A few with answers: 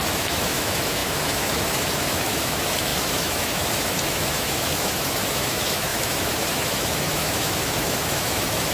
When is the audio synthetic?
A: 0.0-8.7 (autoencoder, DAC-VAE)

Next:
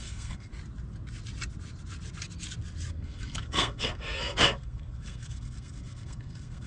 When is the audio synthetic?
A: 0.0-0.5 (codec, SNAC); 2.9-6.7

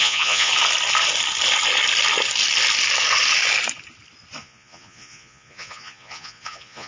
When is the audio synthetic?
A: 0.0-0.5 (vocoder, Vocos); 4.4-6.9

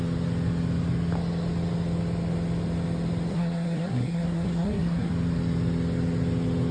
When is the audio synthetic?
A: 3.3-5.1 (codec, SNAC)